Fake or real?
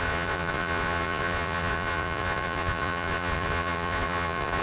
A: fake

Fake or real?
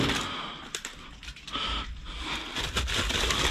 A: real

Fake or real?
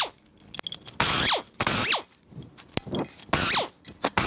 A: real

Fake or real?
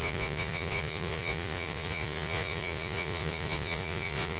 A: fake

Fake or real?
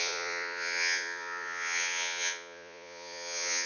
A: fake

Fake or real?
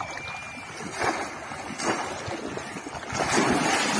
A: real